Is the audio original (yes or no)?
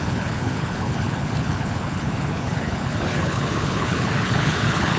no